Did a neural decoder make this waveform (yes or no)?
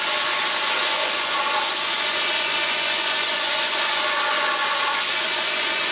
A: yes